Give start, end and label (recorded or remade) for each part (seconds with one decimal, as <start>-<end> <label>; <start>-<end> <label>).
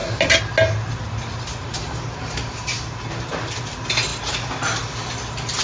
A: 0.0-5.6 recorded